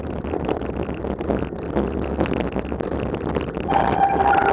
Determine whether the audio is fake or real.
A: real